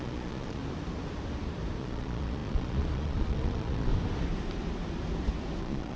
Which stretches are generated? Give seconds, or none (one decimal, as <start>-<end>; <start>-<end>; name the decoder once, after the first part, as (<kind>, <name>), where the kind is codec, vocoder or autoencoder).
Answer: 0.0-0.6 (vocoder, Vocos); 1.8-3.9; 5.6-6.0